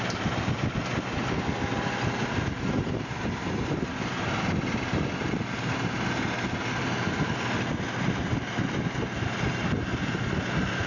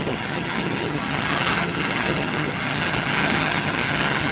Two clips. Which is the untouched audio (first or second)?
first